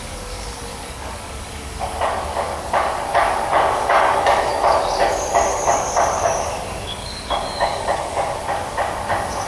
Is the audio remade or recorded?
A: remade